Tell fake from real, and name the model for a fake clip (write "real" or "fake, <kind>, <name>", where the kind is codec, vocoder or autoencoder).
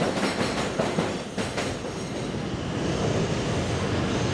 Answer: real